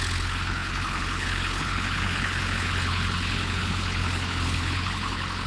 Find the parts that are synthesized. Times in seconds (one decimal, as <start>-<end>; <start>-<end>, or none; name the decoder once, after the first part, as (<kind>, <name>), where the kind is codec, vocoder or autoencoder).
0.0-5.5 (codec, HILCodec)